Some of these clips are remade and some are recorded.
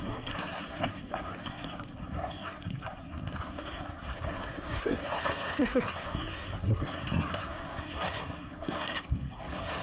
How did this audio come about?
remade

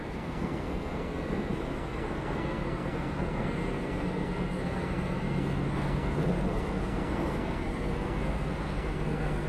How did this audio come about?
remade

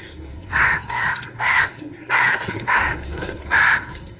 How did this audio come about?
remade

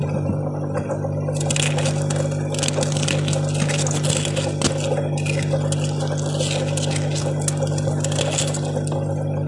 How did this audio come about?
recorded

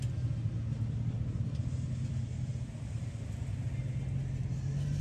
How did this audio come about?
recorded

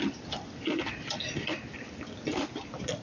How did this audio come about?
recorded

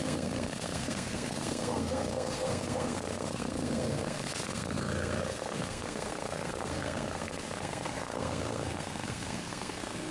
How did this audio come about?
remade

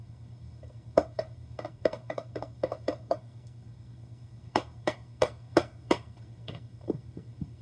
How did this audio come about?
remade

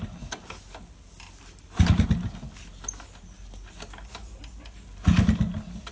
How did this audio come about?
recorded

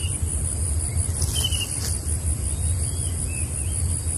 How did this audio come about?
recorded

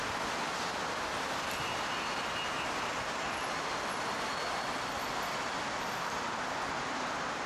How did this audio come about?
recorded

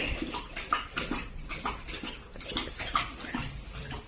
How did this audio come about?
recorded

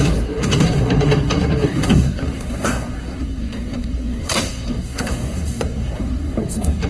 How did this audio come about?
remade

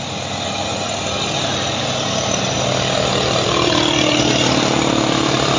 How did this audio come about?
recorded